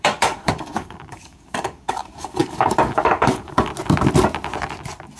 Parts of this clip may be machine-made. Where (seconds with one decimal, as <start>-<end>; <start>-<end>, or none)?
0.0-3.7